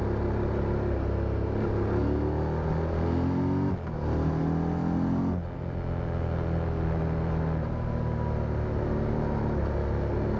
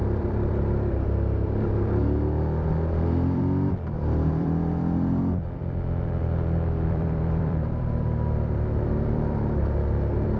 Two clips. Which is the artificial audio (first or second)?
second